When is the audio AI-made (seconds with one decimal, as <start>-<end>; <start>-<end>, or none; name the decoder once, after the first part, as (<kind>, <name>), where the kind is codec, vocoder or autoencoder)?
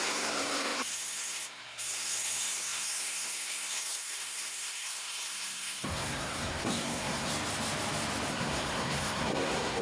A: 0.0-7.3 (codec, SNAC); 8.3-9.8